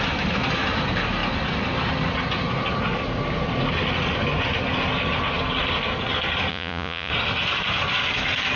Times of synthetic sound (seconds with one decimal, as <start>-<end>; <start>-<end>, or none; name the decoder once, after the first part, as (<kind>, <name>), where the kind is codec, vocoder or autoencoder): 6.5-7.1 (vocoder, Vocos)